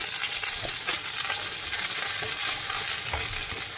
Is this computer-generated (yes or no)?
no